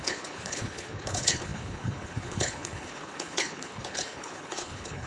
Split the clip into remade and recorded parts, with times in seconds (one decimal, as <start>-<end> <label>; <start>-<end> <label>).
0.0-5.1 remade